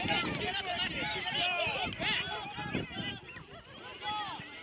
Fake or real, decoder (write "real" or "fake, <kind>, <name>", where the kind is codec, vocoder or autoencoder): fake, vocoder, BigVGAN v2